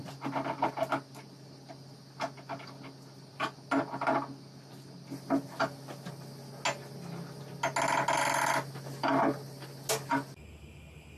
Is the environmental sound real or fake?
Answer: real